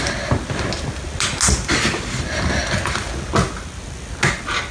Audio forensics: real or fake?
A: real